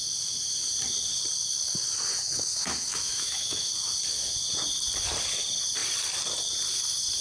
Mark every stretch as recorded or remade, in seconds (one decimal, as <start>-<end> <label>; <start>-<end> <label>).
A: 0.0-2.1 recorded; 2.1-3.7 remade; 3.7-7.2 recorded